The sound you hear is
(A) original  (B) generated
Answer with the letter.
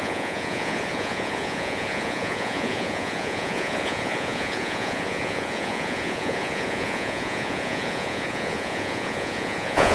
B